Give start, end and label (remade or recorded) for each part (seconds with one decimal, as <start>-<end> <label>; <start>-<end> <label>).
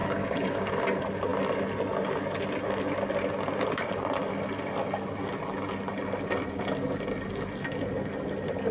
0.0-0.8 remade; 0.8-8.7 recorded